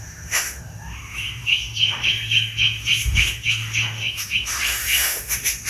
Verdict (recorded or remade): remade